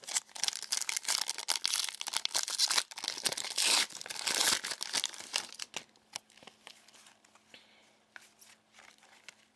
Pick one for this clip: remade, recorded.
recorded